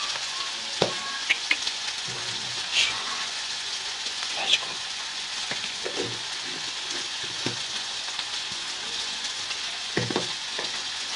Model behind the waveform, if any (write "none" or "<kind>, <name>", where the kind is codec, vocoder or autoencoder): vocoder, Vocos